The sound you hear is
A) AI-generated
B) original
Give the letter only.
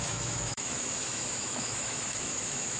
A